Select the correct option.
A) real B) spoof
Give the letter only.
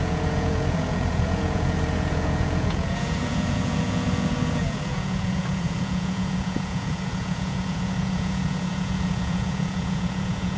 B